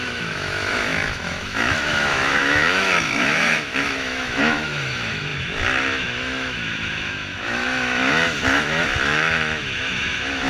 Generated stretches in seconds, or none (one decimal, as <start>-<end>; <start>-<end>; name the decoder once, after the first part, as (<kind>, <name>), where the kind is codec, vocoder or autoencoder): 0.0-10.5 (autoencoder, DAC-VAE)